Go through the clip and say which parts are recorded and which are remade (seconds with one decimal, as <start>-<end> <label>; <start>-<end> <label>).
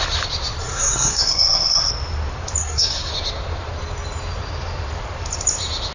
0.0-0.6 recorded; 0.6-1.9 remade; 1.9-2.6 recorded; 2.6-3.1 remade; 3.1-5.9 recorded